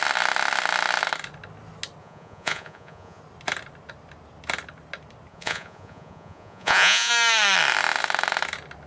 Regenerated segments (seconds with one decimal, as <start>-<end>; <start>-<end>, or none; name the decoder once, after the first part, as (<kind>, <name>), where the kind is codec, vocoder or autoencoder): 2.0-3.2 (vocoder, Vocos); 5.3-7.1